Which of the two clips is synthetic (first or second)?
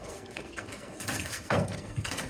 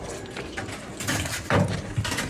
first